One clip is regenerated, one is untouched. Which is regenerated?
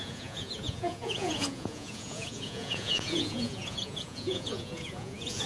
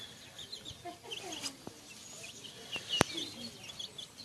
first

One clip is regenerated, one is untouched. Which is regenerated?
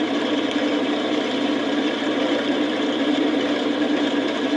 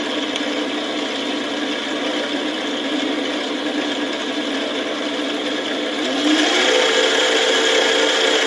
first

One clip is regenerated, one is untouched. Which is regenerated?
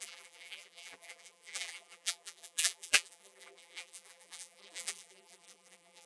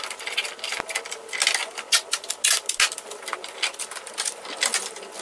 first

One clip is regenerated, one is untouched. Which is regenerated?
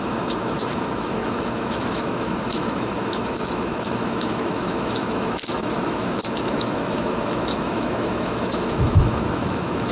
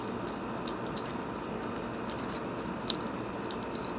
first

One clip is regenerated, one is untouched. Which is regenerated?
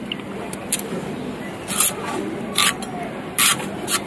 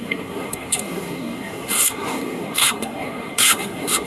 second